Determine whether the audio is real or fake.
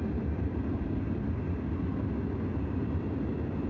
real